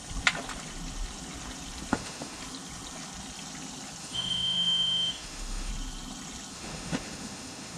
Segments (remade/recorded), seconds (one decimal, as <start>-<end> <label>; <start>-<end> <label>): 0.0-1.9 recorded; 1.9-2.4 remade; 2.4-4.0 recorded; 4.0-5.7 remade; 5.7-6.5 recorded; 6.5-7.8 remade